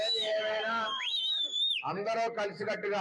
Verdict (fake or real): fake